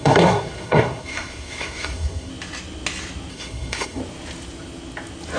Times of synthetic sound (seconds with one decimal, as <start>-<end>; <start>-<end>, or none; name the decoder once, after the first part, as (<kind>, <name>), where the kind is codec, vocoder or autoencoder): 0.0-2.3 (codec, SNAC); 3.3-4.0